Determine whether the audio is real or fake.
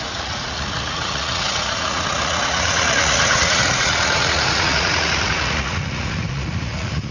fake